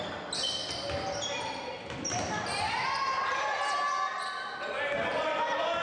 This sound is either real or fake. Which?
real